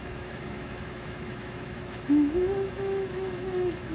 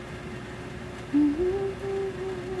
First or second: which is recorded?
second